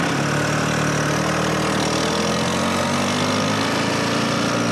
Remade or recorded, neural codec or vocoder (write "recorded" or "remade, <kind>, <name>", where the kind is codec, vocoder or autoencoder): recorded